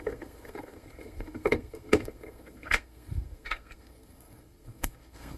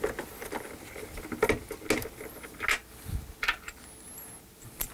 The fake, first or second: first